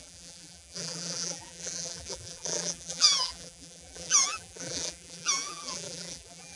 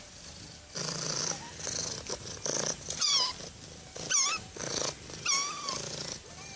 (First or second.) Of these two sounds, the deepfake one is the first